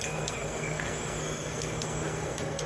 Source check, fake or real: fake